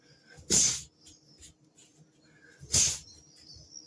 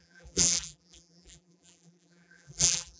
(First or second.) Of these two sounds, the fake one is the second